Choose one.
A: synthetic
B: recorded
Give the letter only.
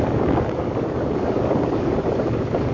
A